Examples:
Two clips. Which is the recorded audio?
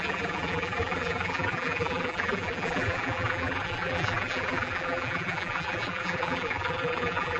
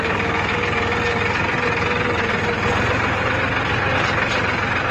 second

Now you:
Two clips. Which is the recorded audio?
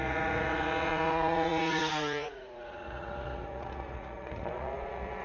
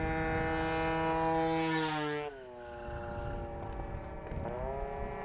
second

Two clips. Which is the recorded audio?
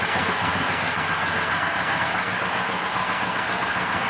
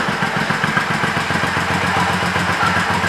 second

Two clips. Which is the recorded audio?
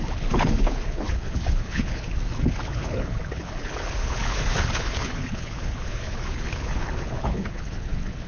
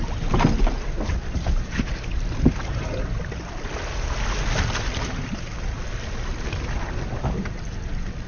second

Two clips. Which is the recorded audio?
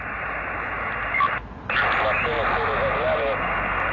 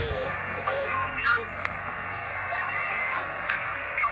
first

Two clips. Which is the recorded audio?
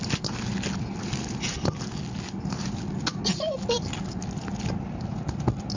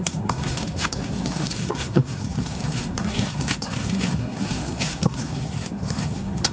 first